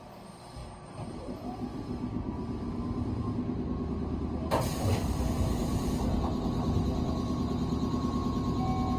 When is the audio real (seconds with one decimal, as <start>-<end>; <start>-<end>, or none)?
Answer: 0.0-9.0